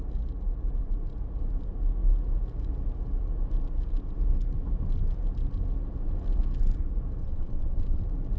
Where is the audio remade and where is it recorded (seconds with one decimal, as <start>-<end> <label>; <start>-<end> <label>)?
0.0-7.2 recorded; 7.2-8.0 remade; 8.0-8.4 recorded

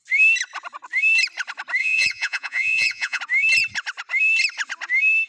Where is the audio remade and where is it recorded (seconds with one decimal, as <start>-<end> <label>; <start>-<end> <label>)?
0.0-1.8 recorded; 1.8-3.2 remade; 3.2-5.3 recorded

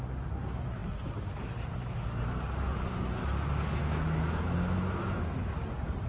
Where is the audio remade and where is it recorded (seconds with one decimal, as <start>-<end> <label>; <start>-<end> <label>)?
0.0-3.8 recorded; 3.8-5.6 remade; 5.6-6.1 recorded

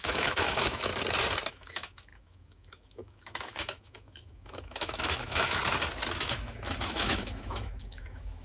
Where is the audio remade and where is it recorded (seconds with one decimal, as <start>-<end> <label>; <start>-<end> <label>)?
0.0-0.9 remade; 0.9-1.5 recorded; 1.5-5.6 remade; 5.6-6.2 recorded; 6.2-8.4 remade

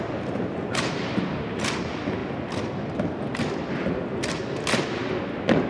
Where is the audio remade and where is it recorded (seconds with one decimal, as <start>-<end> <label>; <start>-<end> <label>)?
0.0-5.7 recorded

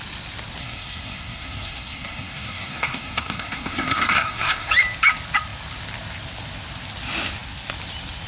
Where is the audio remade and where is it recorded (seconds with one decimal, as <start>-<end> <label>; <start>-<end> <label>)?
0.0-0.6 recorded; 0.6-4.7 remade; 4.7-8.3 recorded

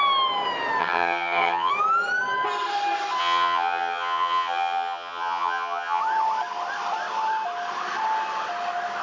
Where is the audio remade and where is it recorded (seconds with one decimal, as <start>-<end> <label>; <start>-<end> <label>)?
0.0-0.8 recorded; 0.8-1.7 remade; 1.7-3.2 recorded; 3.2-6.0 remade; 6.0-9.0 recorded

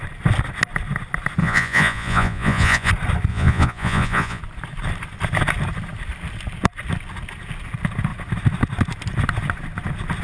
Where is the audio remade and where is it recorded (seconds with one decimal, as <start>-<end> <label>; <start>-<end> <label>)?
0.0-1.4 recorded; 1.4-2.9 remade; 2.9-3.3 recorded; 3.3-4.4 remade; 4.4-10.2 recorded